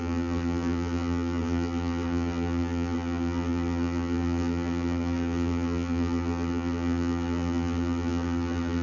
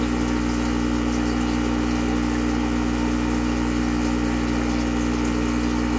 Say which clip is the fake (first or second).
first